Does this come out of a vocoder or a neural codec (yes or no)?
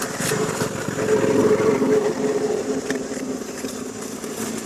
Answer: yes